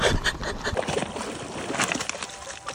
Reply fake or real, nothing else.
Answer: real